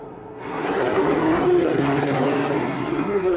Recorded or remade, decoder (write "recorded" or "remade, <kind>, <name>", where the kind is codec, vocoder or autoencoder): remade, codec, SNAC